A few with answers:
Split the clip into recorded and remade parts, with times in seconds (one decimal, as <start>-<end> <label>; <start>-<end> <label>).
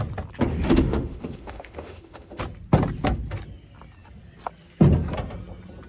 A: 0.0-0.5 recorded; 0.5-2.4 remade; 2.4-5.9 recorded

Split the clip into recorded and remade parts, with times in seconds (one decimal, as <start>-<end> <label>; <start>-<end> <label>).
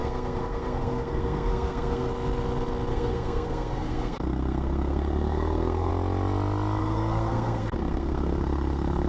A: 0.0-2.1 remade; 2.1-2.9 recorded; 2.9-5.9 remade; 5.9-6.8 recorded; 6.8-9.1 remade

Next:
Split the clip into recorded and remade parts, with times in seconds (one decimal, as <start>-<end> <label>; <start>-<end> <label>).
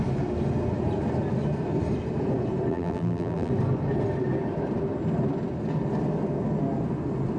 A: 0.0-2.7 recorded; 2.7-3.5 remade; 3.5-7.4 recorded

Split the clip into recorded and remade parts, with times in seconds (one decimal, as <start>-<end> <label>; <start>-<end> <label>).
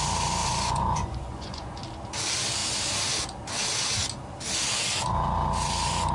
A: 0.0-0.4 recorded; 0.4-1.8 remade; 1.8-6.1 recorded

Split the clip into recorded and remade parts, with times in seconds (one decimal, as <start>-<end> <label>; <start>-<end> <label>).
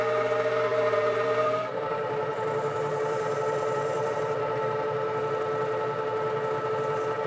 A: 0.0-0.7 recorded; 0.7-4.5 remade; 4.5-7.3 recorded